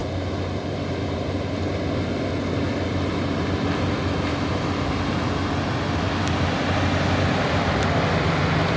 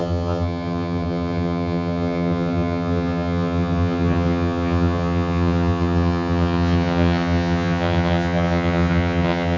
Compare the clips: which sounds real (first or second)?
first